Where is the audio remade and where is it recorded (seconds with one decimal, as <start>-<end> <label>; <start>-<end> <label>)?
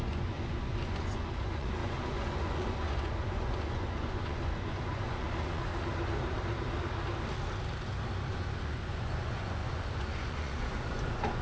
0.0-5.7 remade; 5.7-8.3 recorded; 8.3-11.4 remade